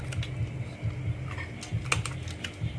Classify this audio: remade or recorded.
recorded